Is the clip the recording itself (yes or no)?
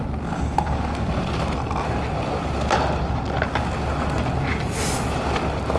yes